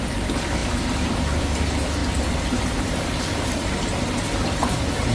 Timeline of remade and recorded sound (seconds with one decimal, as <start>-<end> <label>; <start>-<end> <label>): 0.0-5.1 recorded